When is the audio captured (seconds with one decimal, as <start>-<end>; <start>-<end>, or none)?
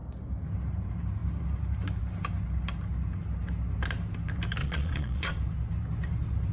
0.0-4.6; 5.3-6.5